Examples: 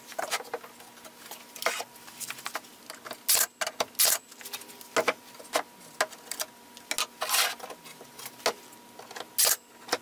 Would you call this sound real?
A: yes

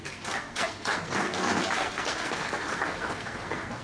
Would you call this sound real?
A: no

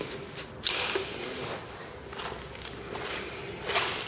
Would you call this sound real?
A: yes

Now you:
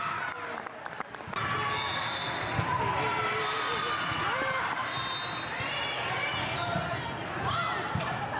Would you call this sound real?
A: yes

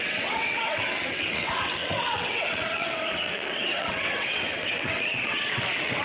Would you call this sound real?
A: no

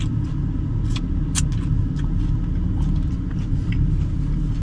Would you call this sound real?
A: yes